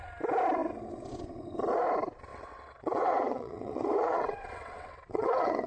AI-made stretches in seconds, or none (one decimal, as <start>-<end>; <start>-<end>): 2.3-5.7